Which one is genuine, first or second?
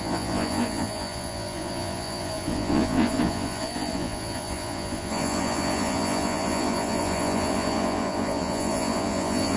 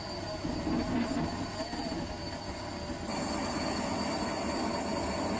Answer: second